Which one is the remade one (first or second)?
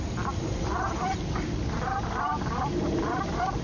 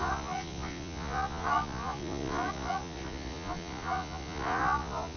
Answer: second